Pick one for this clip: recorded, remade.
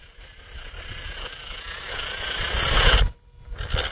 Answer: recorded